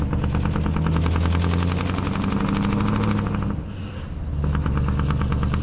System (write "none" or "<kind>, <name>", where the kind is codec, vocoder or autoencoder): none